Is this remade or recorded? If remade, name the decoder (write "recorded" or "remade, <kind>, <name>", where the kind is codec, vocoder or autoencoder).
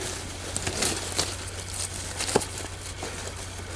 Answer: recorded